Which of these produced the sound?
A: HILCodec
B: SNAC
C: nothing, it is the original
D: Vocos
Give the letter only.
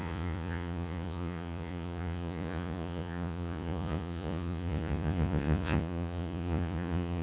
D